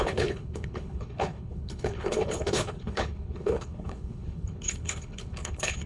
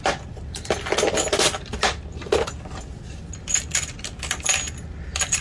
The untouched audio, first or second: second